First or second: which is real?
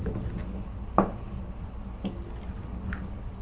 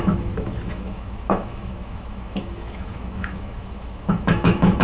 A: first